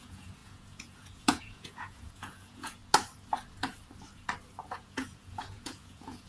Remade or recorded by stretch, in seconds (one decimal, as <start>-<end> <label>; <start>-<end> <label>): 0.0-2.8 remade; 2.8-4.7 recorded; 4.7-6.3 remade